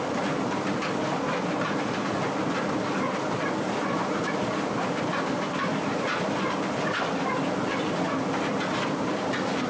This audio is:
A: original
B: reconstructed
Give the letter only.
A